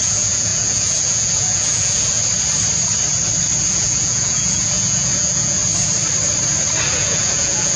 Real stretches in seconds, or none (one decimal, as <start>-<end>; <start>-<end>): 2.2-3.7; 5.6-6.9

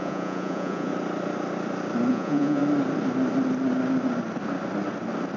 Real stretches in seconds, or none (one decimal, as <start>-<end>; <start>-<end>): 0.9-2.1; 2.6-5.4

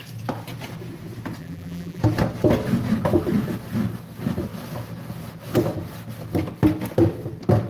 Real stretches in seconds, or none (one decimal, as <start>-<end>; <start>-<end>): 0.0-1.4; 2.0-7.7

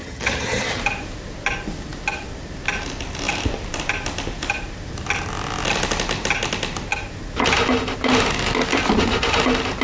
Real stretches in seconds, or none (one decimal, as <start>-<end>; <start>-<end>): 0.8-9.8